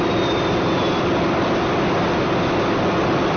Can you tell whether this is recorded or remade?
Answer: recorded